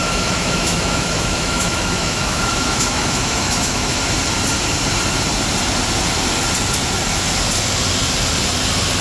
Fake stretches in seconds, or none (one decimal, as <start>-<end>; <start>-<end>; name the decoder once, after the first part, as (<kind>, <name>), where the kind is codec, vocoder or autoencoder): 0.0-4.0 (autoencoder, DAC-VAE)